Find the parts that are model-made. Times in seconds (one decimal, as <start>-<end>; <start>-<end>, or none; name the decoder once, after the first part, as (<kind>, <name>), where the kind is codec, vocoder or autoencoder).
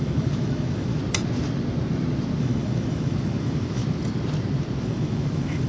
0.0-1.0 (autoencoder, DAC-VAE); 2.4-3.8; 4.8-5.7